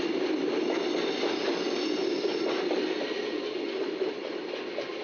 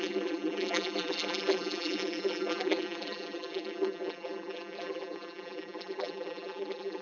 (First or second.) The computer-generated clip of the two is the second